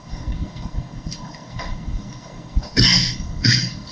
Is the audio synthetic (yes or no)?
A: yes